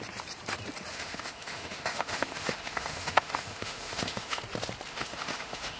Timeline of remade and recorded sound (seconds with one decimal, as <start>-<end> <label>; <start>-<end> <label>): 0.0-0.9 recorded; 0.9-4.4 remade; 4.4-4.9 recorded; 4.9-5.8 remade